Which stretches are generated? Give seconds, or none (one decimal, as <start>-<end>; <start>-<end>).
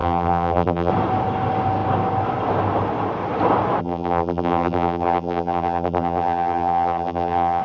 0.0-0.9; 3.8-7.6